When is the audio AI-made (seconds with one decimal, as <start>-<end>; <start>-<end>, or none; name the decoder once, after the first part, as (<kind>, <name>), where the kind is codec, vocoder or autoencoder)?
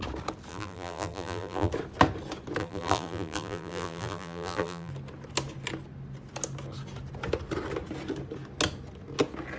0.5-1.7 (vocoder, BigVGAN v2); 2.6-4.9